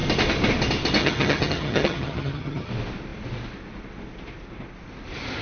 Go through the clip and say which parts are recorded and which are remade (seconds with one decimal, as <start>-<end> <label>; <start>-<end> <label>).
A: 0.0-1.0 recorded; 1.0-2.7 remade; 2.7-5.4 recorded